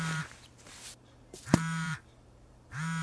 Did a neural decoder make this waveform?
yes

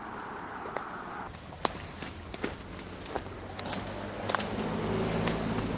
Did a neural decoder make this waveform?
no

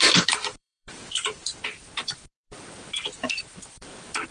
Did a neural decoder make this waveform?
yes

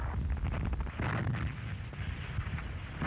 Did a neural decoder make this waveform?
yes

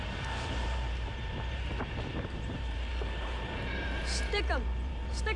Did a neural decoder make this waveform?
yes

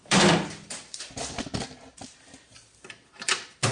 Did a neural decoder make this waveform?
yes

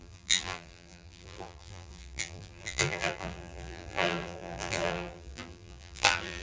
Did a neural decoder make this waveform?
yes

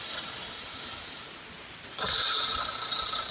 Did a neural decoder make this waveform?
no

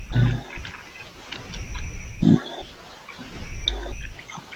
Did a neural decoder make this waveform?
no